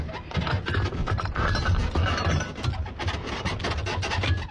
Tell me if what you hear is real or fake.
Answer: real